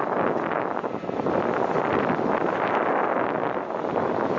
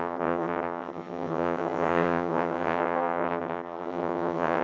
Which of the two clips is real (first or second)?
first